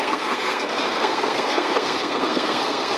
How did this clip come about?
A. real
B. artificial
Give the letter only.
B